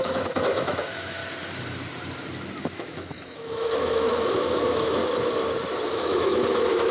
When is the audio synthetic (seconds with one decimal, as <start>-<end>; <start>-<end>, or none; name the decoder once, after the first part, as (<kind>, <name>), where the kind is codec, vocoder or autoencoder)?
0.0-1.2 (autoencoder, DAC-VAE); 2.6-5.0; 5.9-6.9